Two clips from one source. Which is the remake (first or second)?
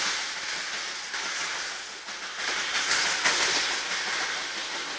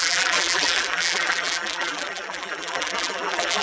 second